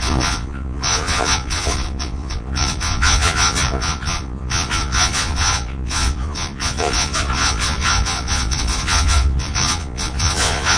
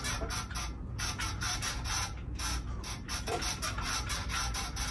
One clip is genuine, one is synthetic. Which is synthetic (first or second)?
first